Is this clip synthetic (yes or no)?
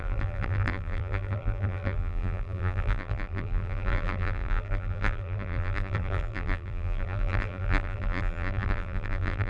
yes